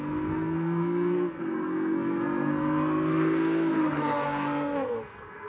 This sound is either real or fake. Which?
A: fake